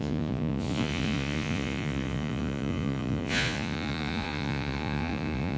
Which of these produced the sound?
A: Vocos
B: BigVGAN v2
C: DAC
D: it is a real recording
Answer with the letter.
A